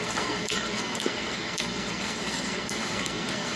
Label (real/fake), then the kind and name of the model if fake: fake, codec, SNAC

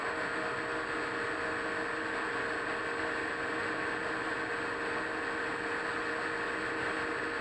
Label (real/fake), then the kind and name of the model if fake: real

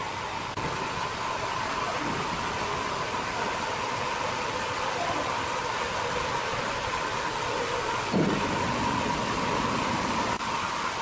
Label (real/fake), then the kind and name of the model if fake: real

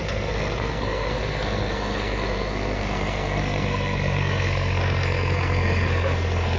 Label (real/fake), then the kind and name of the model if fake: fake, codec, SNAC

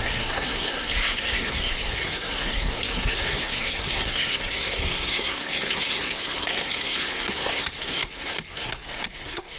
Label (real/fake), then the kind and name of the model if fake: fake, codec, SNAC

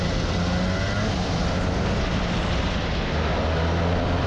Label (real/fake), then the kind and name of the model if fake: real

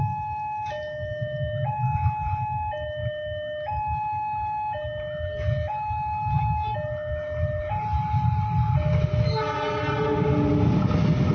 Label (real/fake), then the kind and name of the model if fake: real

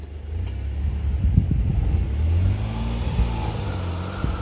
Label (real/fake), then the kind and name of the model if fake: real